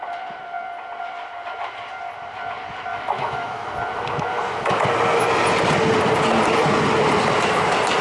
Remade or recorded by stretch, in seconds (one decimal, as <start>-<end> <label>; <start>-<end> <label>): 0.0-2.9 recorded; 2.9-3.7 remade; 3.7-8.0 recorded